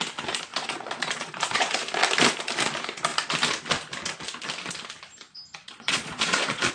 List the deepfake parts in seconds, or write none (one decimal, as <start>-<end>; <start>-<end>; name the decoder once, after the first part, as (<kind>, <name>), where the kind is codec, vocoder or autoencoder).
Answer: 0.5-1.8 (vocoder, Vocos); 5.6-6.7